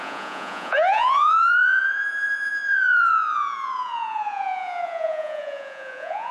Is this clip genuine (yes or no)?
no